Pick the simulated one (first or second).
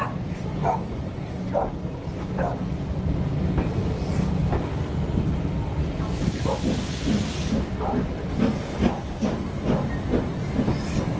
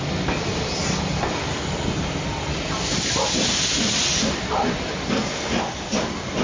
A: second